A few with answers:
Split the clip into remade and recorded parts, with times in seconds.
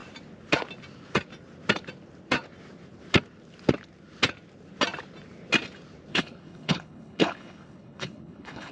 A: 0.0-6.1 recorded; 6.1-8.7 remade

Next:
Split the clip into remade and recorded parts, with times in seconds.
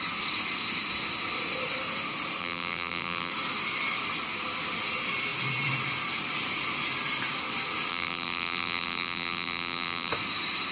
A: 0.0-2.4 recorded; 2.4-3.3 remade; 3.3-7.9 recorded; 7.9-10.1 remade; 10.1-10.7 recorded